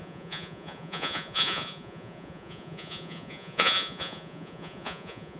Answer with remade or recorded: remade